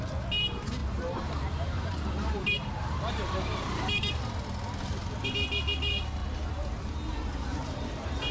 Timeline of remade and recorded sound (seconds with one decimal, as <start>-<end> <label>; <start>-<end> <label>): 0.0-0.8 recorded; 0.8-4.2 remade; 4.2-7.5 recorded; 7.5-8.3 remade